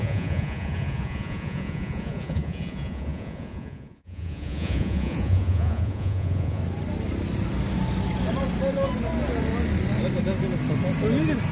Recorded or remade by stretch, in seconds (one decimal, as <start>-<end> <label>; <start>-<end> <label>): 0.0-6.6 remade; 6.6-11.5 recorded